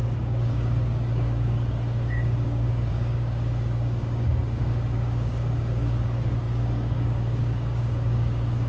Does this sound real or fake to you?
fake